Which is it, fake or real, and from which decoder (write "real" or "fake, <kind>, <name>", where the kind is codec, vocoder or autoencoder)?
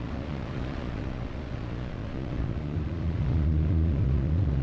fake, vocoder, Vocos